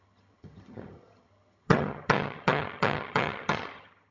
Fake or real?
fake